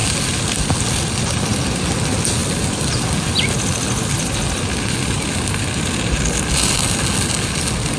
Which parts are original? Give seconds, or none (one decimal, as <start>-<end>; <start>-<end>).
0.0-8.0